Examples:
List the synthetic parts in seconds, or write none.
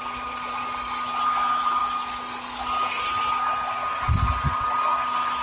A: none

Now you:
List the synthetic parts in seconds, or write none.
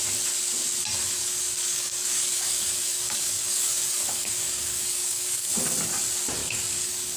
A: 1.2-5.5 (codec, DAC); 6.4-7.2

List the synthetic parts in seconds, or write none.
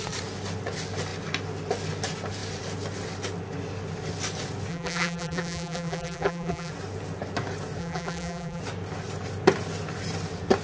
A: 4.7-6.7 (vocoder, BigVGAN v2); 7.8-8.6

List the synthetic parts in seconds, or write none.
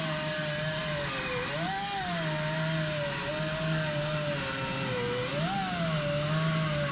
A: none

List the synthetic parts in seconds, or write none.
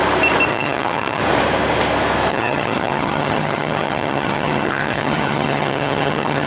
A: 0.5-1.2 (vocoder, HiFi-GAN); 2.3-6.5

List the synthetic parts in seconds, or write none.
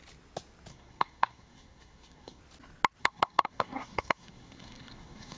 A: 0.7-2.4 (codec, SNAC); 3.0-5.4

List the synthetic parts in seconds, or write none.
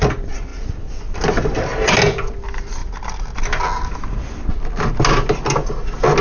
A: none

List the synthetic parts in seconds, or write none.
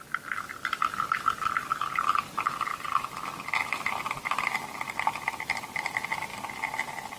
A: none